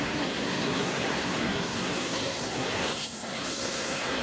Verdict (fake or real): fake